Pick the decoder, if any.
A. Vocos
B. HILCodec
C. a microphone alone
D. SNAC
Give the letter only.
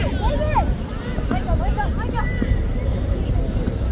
C